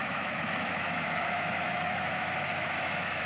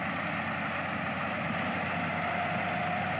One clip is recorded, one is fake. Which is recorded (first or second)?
second